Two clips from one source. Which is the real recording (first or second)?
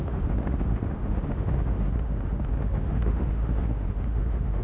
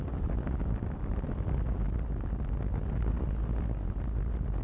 second